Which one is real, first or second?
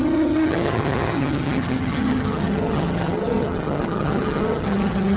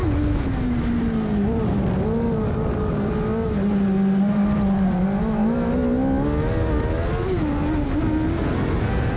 second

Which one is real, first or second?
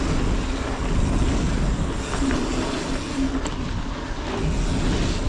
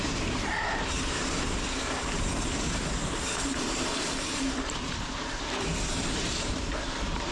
first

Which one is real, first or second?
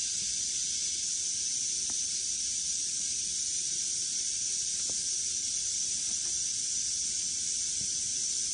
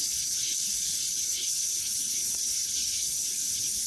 first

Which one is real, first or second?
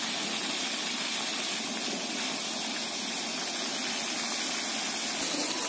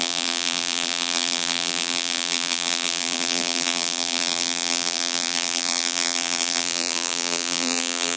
first